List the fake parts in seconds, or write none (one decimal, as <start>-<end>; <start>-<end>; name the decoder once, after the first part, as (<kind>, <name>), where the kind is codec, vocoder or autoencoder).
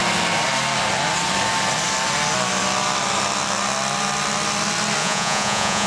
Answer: 5.0-5.9 (vocoder, Vocos)